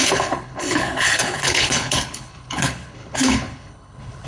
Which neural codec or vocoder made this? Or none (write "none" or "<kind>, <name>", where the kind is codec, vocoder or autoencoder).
codec, HILCodec